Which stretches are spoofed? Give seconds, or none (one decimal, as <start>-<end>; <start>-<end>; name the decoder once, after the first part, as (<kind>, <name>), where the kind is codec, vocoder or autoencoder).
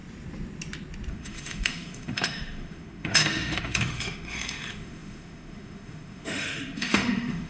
1.1-7.5 (autoencoder, DAC-VAE)